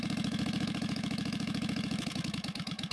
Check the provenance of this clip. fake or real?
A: fake